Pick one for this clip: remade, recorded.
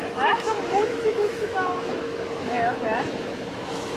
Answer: remade